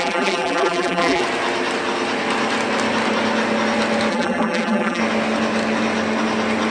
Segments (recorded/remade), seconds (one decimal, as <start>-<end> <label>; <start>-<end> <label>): 0.0-1.2 remade; 1.2-4.1 recorded; 4.1-5.0 remade; 5.0-6.7 recorded